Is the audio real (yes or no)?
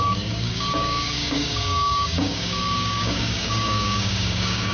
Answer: no